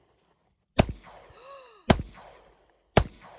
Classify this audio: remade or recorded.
remade